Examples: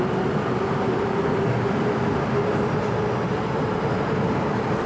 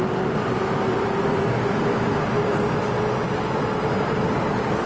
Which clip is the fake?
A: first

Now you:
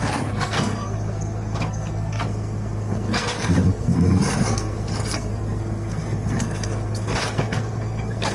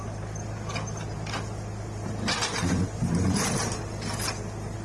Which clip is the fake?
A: first